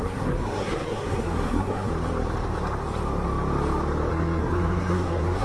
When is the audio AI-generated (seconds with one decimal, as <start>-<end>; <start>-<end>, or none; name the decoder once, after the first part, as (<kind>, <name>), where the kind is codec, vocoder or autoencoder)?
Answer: 0.0-1.9 (codec, SNAC); 4.1-5.4